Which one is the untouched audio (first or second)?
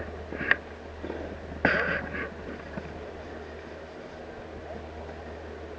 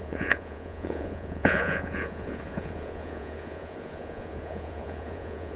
first